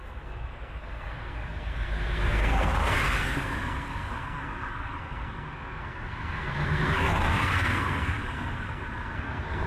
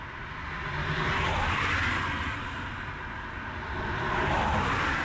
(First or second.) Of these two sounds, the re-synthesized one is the first